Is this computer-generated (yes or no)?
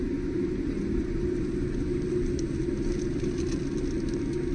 no